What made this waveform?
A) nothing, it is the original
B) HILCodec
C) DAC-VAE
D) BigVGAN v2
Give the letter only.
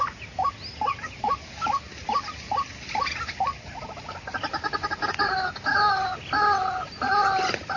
A